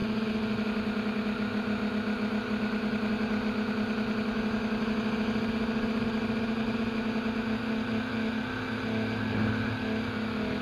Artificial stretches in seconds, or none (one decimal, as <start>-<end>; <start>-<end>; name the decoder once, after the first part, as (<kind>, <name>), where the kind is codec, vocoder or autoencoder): none